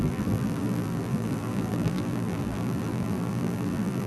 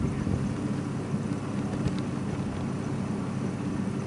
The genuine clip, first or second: second